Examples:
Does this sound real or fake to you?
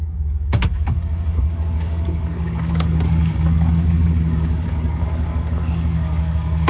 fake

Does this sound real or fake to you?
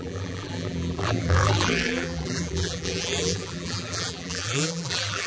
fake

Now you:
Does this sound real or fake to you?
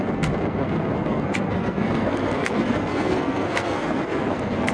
fake